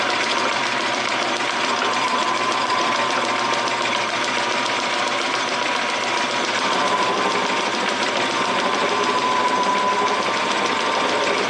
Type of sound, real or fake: fake